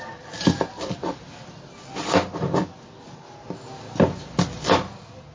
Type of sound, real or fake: real